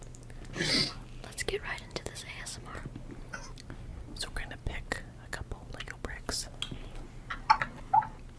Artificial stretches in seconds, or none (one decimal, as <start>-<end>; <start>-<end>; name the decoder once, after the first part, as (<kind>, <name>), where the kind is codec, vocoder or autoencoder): 1.4-2.4 (vocoder, BigVGAN v2)